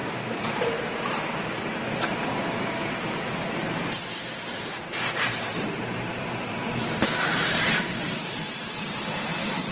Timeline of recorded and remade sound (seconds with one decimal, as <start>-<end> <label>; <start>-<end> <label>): 0.0-9.7 remade